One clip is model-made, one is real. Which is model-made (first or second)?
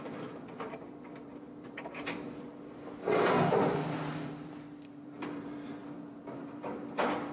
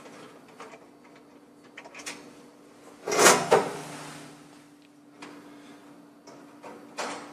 first